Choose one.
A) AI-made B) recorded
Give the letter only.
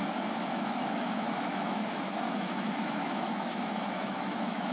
A